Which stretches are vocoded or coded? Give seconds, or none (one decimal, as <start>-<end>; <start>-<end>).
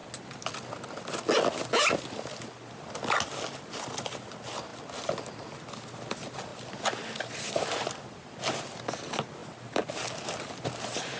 none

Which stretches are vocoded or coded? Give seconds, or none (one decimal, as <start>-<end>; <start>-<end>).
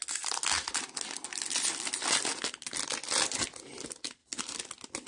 none